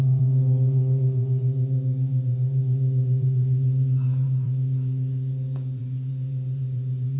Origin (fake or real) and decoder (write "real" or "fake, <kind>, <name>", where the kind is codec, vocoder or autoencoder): fake, vocoder, Vocos